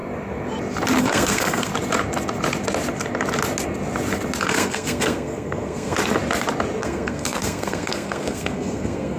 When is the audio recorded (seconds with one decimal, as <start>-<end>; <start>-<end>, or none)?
0.0-1.0; 1.7-4.4; 6.0-6.8